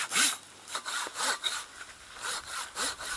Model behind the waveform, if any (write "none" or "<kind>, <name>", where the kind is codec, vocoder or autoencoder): none